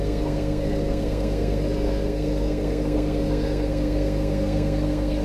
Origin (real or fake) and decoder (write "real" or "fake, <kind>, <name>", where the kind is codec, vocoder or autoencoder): fake, codec, SNAC